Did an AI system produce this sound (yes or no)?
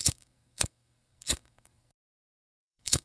yes